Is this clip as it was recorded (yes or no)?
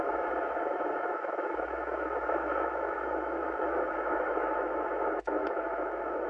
no